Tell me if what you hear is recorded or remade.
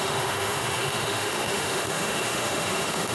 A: remade